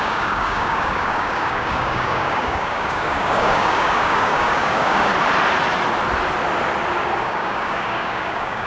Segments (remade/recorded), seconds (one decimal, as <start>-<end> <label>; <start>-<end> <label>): 0.0-5.1 remade; 5.1-7.2 recorded; 7.2-8.7 remade